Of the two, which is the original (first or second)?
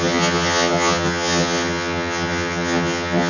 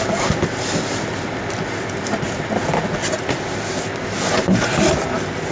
second